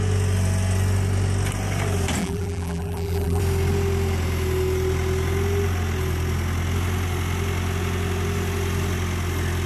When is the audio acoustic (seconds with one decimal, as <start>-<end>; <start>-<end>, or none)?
0.0-2.2; 3.4-9.7